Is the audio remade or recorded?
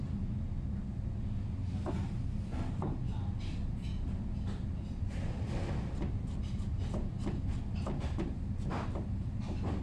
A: recorded